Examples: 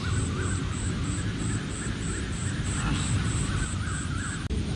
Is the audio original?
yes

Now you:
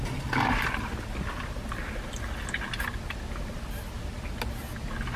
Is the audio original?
yes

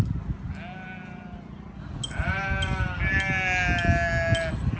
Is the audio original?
yes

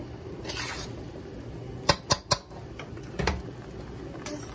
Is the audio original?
yes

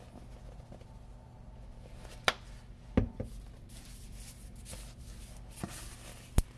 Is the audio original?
yes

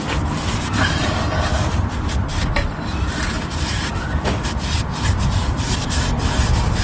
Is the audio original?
yes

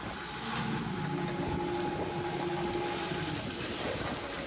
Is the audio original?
yes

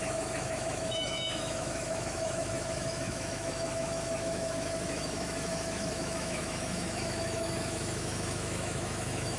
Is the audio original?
no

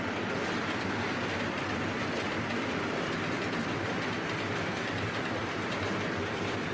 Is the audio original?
no